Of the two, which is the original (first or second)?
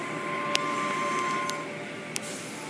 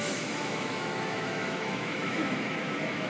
first